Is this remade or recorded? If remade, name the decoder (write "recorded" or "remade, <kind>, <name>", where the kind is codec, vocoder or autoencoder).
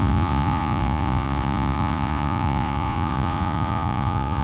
remade, vocoder, Vocos